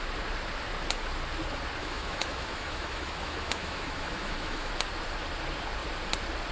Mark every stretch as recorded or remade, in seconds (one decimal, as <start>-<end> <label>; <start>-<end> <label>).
0.0-1.8 recorded; 1.8-4.7 remade; 4.7-6.5 recorded

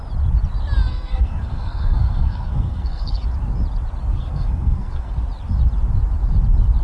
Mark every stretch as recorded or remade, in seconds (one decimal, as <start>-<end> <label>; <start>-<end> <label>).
0.0-0.9 recorded; 0.9-3.2 remade; 3.2-4.1 recorded; 4.1-5.1 remade; 5.1-6.8 recorded

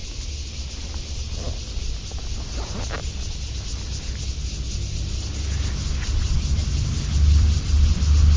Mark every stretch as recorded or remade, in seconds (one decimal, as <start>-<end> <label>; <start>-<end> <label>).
0.0-6.6 recorded; 6.6-7.9 remade; 7.9-8.4 recorded

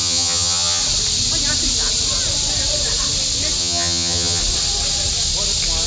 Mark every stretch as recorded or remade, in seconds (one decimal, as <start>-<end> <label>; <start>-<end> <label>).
0.0-0.8 remade; 0.8-3.6 recorded; 3.6-4.4 remade; 4.4-5.9 recorded

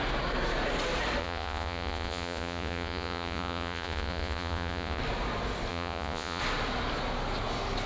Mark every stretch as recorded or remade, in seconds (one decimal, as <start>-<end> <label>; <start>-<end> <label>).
0.0-1.2 recorded; 1.2-5.0 remade; 5.0-5.7 recorded; 5.7-6.4 remade; 6.4-7.9 recorded